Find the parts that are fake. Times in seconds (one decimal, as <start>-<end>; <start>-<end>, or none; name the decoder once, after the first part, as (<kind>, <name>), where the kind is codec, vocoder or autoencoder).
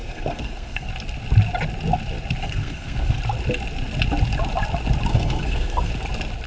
0.0-0.9 (codec, SNAC); 2.4-3.2; 5.1-5.9